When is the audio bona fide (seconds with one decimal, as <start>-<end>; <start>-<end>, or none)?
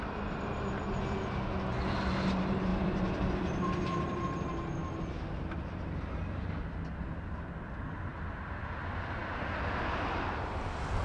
0.0-2.7; 3.3-8.1; 8.6-11.0